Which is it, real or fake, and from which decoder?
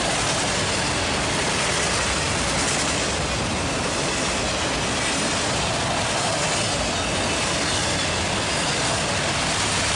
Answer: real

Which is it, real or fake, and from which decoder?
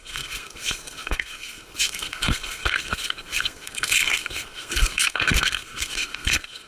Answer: fake, codec, SNAC